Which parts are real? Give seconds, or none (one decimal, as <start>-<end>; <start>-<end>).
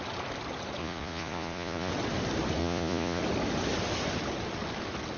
0.0-0.8; 1.9-2.6; 3.2-5.2